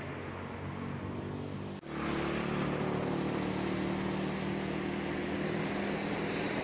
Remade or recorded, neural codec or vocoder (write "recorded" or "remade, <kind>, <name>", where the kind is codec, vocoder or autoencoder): recorded